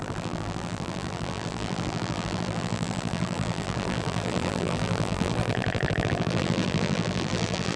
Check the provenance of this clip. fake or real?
fake